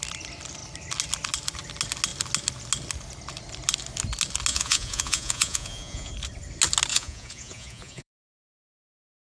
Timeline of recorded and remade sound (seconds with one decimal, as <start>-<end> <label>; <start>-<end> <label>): 0.0-4.5 recorded; 4.5-6.1 remade; 6.1-6.9 recorded; 6.9-8.7 remade; 8.7-9.3 recorded